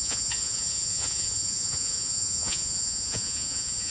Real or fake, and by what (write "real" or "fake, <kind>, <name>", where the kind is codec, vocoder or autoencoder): fake, vocoder, Vocos